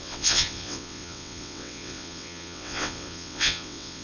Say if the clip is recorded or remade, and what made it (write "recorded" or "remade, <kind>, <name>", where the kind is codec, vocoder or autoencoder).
remade, vocoder, WaveNeXt